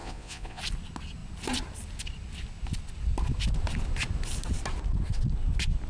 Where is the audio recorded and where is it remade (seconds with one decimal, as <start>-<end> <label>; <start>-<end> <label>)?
0.0-0.6 remade; 0.6-5.9 recorded